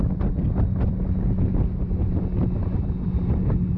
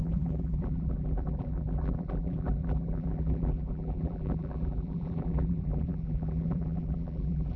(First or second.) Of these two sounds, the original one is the first